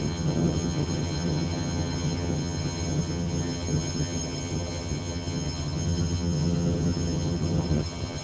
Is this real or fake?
fake